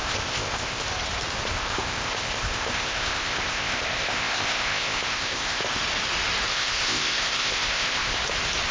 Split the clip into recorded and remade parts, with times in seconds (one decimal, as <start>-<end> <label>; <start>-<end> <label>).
0.0-0.8 remade; 0.8-1.5 recorded; 1.5-5.8 remade; 5.8-6.5 recorded; 6.5-8.2 remade; 8.2-8.7 recorded